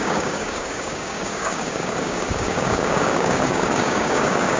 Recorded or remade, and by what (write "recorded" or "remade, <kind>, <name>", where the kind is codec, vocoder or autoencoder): remade, codec, DAC